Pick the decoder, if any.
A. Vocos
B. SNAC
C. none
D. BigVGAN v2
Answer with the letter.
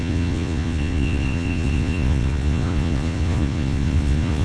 A